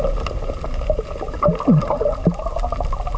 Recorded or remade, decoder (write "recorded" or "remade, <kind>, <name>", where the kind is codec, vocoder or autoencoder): recorded